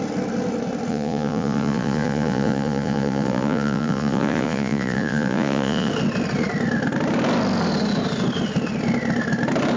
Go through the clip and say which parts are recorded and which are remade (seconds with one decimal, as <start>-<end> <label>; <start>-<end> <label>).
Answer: 0.0-0.9 recorded; 0.9-5.9 remade; 5.9-9.8 recorded